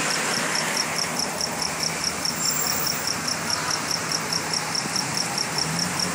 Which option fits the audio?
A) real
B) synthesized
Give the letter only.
B